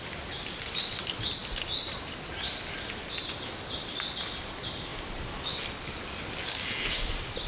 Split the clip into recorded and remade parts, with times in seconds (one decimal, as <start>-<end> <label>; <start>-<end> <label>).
0.0-7.5 recorded